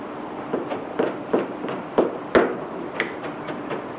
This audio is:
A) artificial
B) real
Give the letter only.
B